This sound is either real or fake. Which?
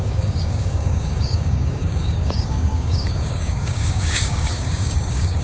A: fake